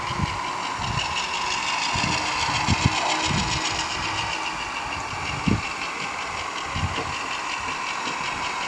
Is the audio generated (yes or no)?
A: no